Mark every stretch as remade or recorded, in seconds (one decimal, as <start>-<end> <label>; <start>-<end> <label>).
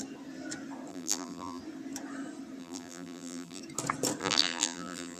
0.0-0.9 recorded; 0.9-1.6 remade; 1.6-2.6 recorded; 2.6-3.6 remade; 3.6-4.2 recorded; 4.2-5.2 remade